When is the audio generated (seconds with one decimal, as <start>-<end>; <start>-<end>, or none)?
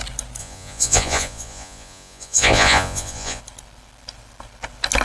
0.4-3.4